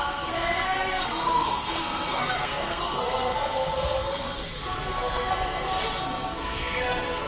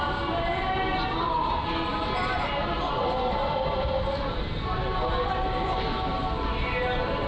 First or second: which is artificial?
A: first